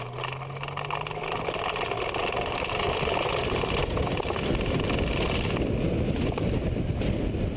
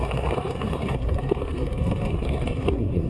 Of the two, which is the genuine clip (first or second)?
first